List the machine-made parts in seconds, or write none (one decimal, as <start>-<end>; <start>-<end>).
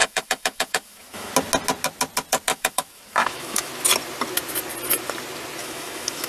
0.0-1.3; 2.5-3.7; 5.6-6.3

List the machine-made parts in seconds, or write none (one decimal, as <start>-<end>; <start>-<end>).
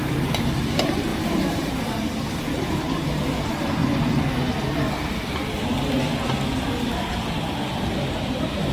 0.0-3.8; 7.7-8.7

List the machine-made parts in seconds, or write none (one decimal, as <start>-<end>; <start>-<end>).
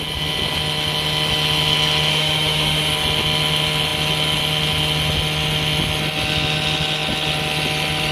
2.1-2.9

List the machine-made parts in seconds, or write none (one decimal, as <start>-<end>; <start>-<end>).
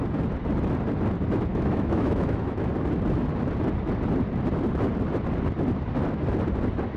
1.5-2.7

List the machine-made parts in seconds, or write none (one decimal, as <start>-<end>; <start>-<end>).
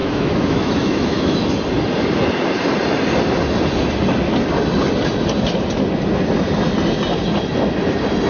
0.0-1.5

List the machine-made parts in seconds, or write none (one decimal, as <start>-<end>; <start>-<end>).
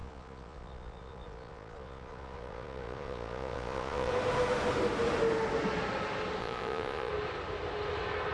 0.0-4.1; 6.4-7.1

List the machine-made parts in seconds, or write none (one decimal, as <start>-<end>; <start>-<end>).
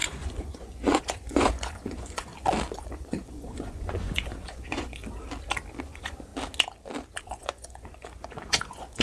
0.0-2.3; 2.8-5.0; 5.8-6.3; 7.2-9.0